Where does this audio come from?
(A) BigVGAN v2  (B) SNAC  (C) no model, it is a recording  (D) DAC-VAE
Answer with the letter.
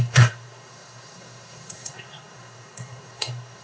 B